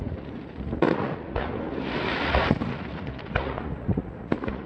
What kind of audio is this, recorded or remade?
remade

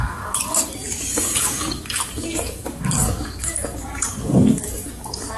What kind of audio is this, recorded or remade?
remade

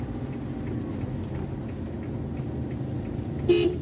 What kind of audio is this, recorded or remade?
recorded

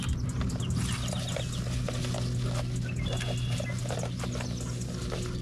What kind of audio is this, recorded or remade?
recorded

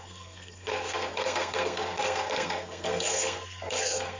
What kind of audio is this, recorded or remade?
remade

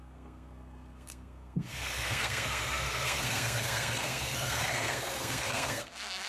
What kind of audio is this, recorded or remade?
remade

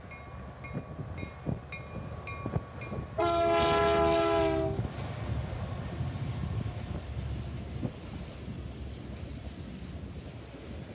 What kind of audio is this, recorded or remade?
recorded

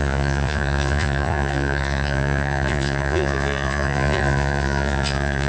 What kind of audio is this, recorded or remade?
remade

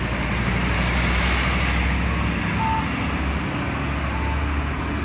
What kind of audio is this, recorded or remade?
recorded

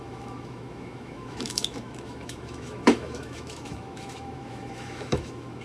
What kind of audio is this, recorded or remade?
remade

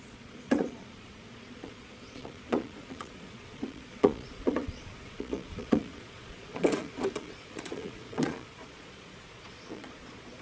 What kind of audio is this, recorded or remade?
remade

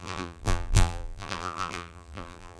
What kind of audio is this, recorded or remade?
remade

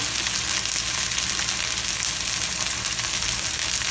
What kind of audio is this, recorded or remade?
recorded